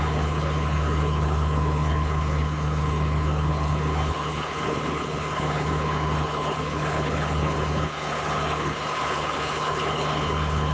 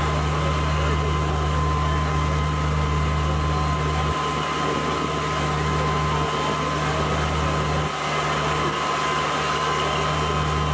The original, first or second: second